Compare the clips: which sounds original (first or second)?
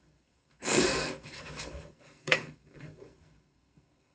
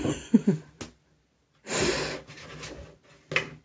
second